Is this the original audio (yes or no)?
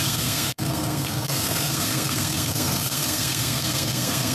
no